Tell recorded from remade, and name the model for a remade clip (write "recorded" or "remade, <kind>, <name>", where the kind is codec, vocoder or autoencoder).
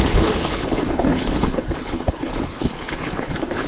remade, codec, HILCodec